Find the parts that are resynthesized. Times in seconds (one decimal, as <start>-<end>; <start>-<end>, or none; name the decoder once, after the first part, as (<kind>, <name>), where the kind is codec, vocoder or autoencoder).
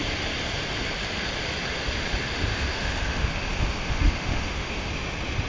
2.5-4.9 (autoencoder, DAC-VAE)